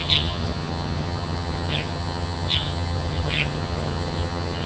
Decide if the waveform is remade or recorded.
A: remade